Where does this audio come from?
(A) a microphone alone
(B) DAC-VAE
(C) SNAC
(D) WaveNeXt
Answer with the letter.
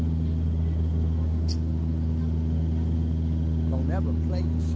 A